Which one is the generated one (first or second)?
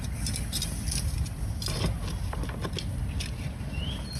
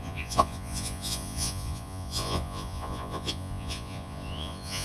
second